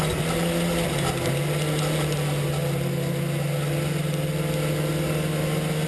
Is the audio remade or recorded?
recorded